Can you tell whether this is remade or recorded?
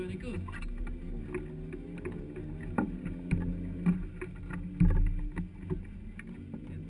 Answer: recorded